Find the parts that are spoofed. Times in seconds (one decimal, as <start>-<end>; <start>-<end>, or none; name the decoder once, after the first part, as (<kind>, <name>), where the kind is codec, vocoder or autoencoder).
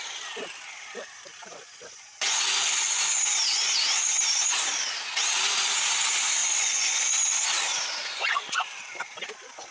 1.4-3.2 (vocoder, Vocos); 6.4-7.1; 8.0-8.6